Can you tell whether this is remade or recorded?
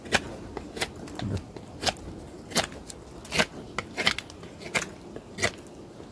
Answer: recorded